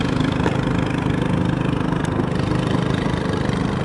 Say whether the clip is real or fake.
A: real